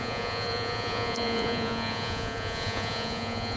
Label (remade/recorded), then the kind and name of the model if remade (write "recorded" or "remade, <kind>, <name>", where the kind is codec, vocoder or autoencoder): remade, vocoder, Vocos